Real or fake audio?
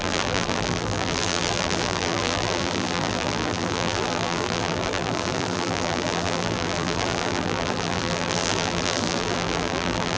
fake